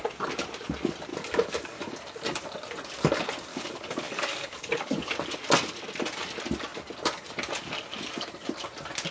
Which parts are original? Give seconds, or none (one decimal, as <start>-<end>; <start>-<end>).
0.0-1.1; 1.9-3.5; 5.1-9.1